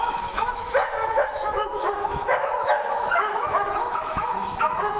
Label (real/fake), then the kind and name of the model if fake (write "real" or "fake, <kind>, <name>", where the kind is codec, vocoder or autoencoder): fake, autoencoder, DAC-VAE